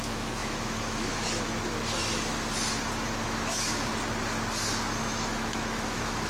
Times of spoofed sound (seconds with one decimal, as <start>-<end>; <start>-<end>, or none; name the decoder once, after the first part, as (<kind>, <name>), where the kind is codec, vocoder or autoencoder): 0.0-1.5 (autoencoder, DAC-VAE); 3.2-3.9; 5.0-6.3